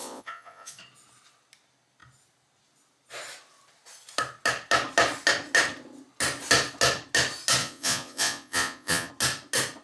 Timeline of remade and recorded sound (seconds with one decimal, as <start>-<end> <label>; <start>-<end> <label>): 0.0-0.8 remade; 0.8-7.6 recorded; 7.6-9.1 remade; 9.1-9.8 recorded

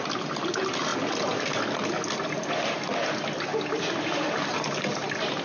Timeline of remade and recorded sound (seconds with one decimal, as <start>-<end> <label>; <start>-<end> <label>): 0.0-5.4 recorded

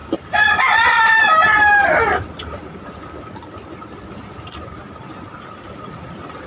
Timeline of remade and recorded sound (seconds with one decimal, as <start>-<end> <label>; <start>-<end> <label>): 0.0-1.0 recorded; 1.0-6.5 remade

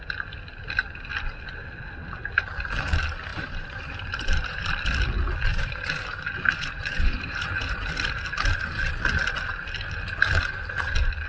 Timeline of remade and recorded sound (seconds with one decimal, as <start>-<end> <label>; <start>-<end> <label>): 0.0-3.3 recorded; 3.3-4.6 remade; 4.6-5.5 recorded; 5.5-7.9 remade; 7.9-11.3 recorded

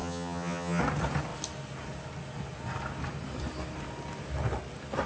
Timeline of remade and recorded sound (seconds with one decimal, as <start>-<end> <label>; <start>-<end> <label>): 0.0-0.8 remade; 0.8-5.1 recorded

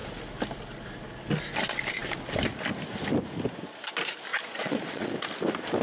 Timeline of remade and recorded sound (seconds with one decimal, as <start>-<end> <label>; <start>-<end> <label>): 0.0-4.3 recorded; 4.3-5.1 remade; 5.1-5.8 recorded

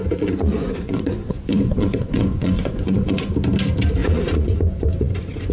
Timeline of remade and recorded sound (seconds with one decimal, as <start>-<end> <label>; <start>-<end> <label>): 0.0-3.3 remade; 3.3-4.0 recorded; 4.0-5.5 remade